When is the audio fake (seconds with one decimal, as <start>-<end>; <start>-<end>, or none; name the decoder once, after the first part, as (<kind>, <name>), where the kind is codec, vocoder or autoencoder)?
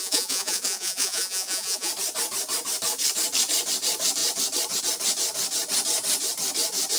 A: 0.0-1.9 (vocoder, Vocos)